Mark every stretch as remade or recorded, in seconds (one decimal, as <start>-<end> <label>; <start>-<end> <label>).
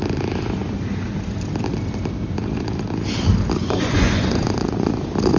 0.0-3.6 recorded; 3.6-4.9 remade; 4.9-5.4 recorded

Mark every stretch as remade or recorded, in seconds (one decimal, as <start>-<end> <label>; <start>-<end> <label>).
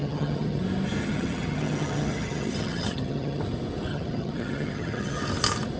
0.0-0.6 remade; 0.6-1.0 recorded; 1.0-3.4 remade; 3.4-3.9 recorded; 3.9-5.2 remade; 5.2-5.8 recorded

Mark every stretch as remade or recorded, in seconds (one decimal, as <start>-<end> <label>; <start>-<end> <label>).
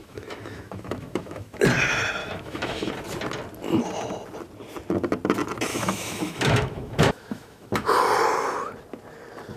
0.0-1.6 remade; 1.6-2.2 recorded; 2.2-2.9 remade; 2.9-5.7 recorded; 5.7-7.9 remade; 7.9-9.6 recorded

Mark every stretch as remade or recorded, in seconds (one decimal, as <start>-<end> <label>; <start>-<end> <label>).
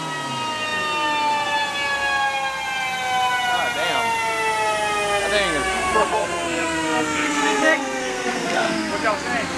0.0-5.7 recorded; 5.7-8.9 remade; 8.9-9.6 recorded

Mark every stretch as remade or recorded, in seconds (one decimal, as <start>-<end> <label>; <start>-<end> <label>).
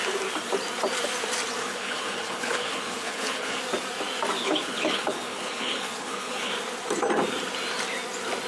0.0-1.6 recorded; 1.6-3.6 remade; 3.6-4.4 recorded; 4.4-6.5 remade; 6.5-8.5 recorded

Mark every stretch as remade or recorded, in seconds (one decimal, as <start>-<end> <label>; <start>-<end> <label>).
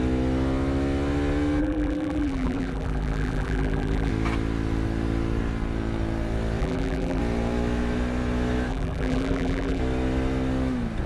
0.0-1.6 recorded; 1.6-4.1 remade; 4.1-6.6 recorded; 6.6-7.2 remade; 7.2-8.7 recorded; 8.7-9.8 remade; 9.8-11.1 recorded